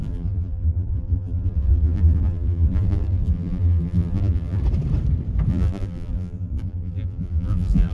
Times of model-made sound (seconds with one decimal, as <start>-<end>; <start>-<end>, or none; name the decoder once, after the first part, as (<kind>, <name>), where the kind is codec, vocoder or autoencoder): 0.0-4.6 (vocoder, BigVGAN v2); 5.5-7.9